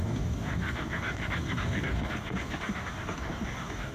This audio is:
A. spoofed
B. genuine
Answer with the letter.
A